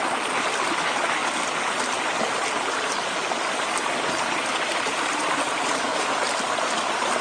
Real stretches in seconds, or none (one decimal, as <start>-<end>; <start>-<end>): 0.0-7.2